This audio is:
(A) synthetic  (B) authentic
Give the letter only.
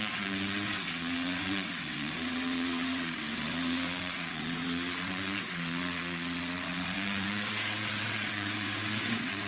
A